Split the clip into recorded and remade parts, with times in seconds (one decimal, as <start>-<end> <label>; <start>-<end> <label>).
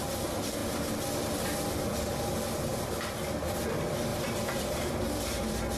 0.0-4.1 recorded; 4.1-5.0 remade; 5.0-5.8 recorded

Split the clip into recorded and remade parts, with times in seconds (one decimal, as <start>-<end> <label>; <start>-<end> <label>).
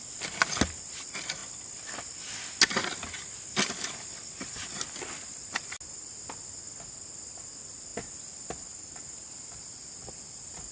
0.0-10.7 recorded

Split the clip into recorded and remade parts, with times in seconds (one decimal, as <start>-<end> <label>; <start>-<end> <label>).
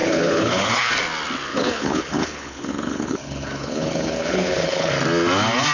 0.0-0.9 remade; 0.9-1.5 recorded; 1.5-4.9 remade; 4.9-5.7 recorded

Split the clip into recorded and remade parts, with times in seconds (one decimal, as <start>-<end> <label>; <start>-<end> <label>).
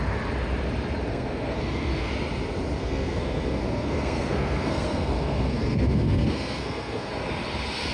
0.0-1.1 recorded; 1.1-2.1 remade; 2.1-2.8 recorded; 2.8-7.1 remade; 7.1-7.9 recorded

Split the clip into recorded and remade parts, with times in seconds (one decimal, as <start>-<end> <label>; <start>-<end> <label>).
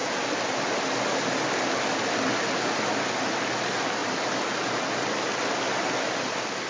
0.0-6.7 recorded